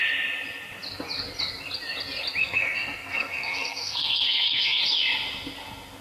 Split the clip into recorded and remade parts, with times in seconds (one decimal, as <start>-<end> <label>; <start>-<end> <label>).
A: 0.0-2.4 recorded; 2.4-4.8 remade; 4.8-6.0 recorded